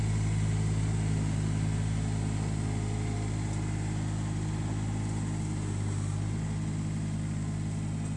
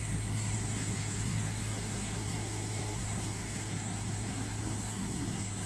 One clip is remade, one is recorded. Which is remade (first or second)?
second